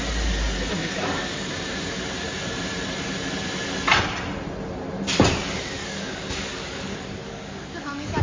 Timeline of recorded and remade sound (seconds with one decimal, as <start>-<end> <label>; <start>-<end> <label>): 0.0-0.7 recorded; 0.7-1.5 remade; 1.5-5.8 recorded; 5.8-8.2 remade